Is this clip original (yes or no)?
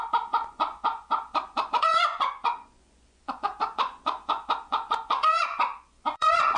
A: no